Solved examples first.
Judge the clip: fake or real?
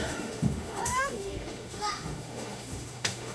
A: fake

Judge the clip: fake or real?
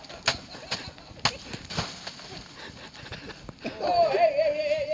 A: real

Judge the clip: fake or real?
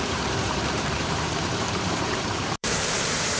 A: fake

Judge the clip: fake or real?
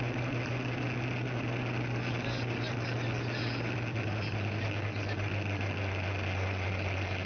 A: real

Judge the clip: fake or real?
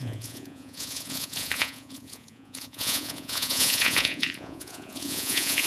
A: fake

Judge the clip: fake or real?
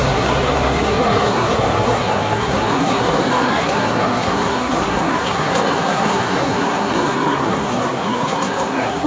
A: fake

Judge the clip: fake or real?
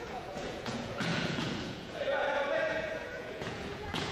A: fake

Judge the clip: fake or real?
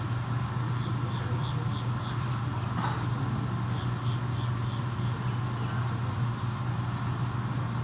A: real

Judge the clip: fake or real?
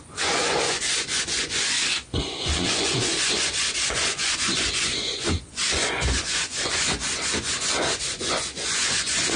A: fake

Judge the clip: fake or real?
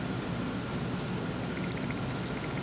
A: real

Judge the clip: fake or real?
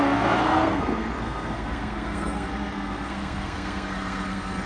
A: fake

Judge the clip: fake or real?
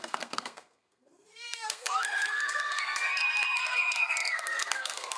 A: fake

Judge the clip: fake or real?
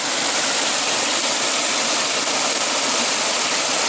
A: real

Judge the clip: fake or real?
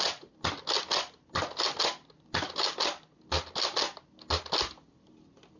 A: real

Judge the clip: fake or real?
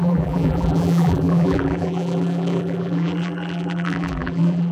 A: fake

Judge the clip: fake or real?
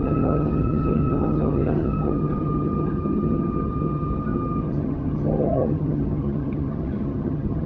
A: fake